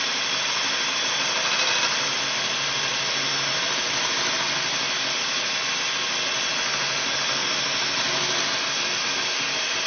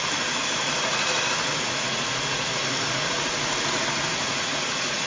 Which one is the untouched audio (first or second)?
first